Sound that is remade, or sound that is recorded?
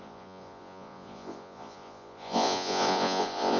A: remade